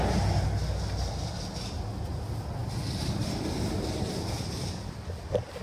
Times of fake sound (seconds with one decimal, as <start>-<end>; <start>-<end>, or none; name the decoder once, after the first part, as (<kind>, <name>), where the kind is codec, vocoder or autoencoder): none

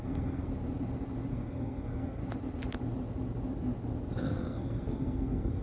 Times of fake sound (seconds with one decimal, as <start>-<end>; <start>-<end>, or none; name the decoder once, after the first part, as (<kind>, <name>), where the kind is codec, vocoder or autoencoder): 0.0-0.5 (codec, SNAC); 1.3-2.2; 4.2-5.6

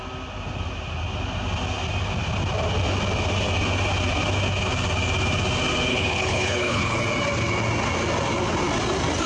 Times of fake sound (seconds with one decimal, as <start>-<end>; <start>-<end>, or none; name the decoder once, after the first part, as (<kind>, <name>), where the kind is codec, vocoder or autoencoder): 5.9-7.0 (codec, HILCodec)

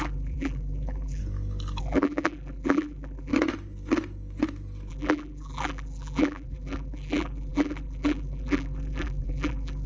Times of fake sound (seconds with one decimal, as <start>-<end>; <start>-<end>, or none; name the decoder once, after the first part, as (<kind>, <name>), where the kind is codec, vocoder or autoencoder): 0.0-1.2 (vocoder, BigVGAN v2); 1.8-3.3; 4.9-9.9

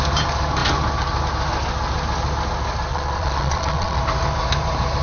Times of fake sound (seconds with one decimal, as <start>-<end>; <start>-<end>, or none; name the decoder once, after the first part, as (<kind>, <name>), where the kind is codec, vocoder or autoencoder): 2.9-4.0 (vocoder, Vocos)

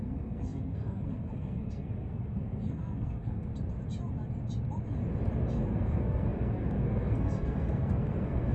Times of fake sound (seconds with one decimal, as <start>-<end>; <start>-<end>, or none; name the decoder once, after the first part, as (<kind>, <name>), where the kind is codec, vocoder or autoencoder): 0.0-3.5 (codec, SNAC); 5.5-8.5